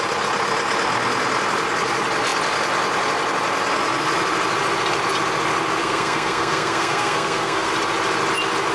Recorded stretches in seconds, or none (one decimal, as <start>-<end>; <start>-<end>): 0.0-5.8; 7.7-8.7